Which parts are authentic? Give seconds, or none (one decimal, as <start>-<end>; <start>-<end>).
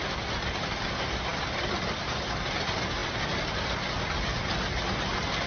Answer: 0.0-1.3; 2.5-5.5